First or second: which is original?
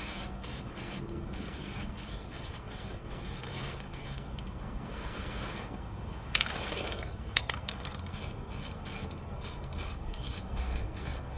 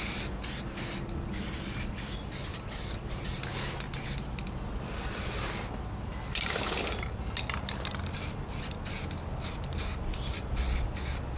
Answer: second